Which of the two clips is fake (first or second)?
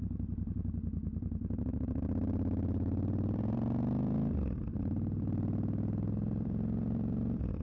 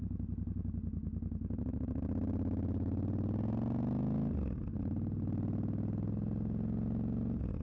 first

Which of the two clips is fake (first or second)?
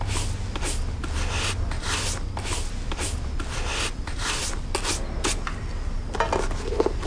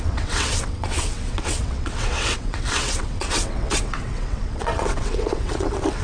second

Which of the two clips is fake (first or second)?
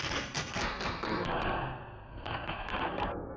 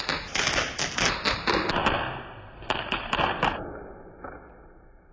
first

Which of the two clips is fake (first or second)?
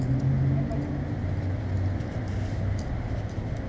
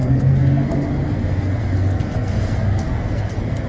second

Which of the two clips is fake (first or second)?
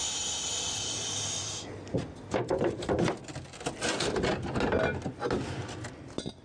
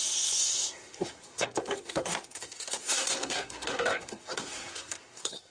second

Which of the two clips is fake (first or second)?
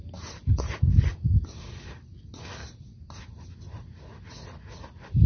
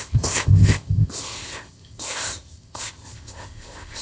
second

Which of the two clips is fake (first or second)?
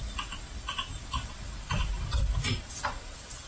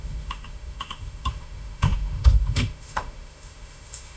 second